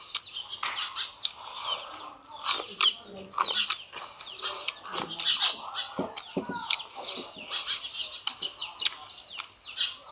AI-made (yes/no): no